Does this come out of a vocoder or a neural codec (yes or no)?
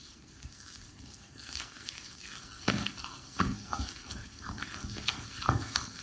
yes